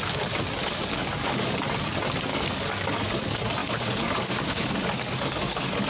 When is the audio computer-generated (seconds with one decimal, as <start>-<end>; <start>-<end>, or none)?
0.6-1.6; 2.3-3.2; 3.6-5.9